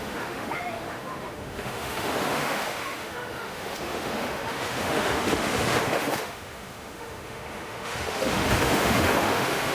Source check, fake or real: fake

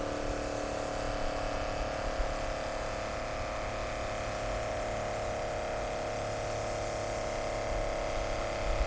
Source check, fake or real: real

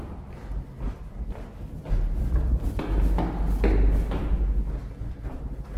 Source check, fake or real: real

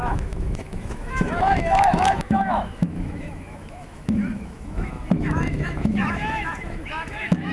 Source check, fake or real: fake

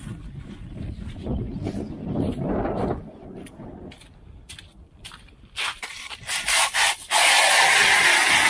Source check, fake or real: real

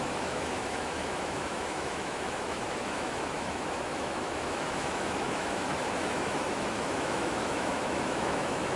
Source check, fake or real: fake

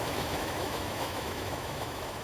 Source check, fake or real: fake